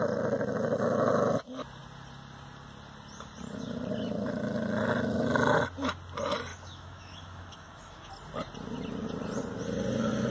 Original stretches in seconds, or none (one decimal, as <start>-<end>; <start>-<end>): 0.0-6.5; 8.1-10.3